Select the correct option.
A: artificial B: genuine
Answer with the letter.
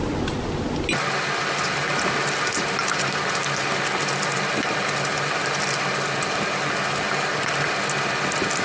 B